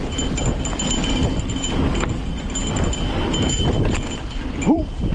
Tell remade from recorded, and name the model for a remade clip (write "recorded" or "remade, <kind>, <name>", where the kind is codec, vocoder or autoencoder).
recorded